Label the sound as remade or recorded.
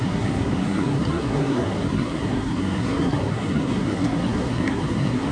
remade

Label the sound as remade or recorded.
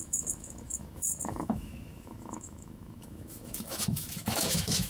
remade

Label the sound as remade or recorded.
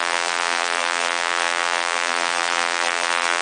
remade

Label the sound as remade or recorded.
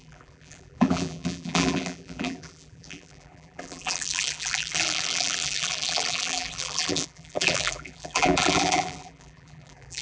remade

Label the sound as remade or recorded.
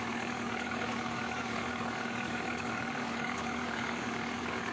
remade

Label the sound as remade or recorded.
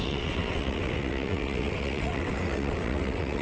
remade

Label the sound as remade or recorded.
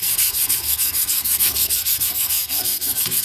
remade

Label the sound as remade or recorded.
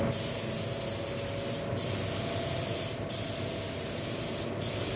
recorded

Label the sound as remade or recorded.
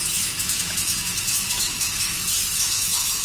remade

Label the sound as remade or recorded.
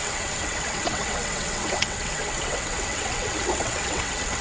remade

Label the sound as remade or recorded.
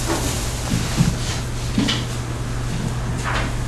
recorded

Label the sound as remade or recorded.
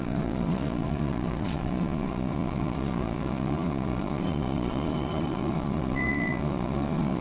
remade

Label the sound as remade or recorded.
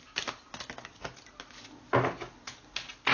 recorded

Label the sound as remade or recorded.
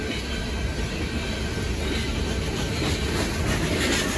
recorded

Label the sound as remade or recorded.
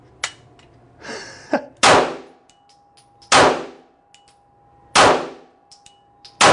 recorded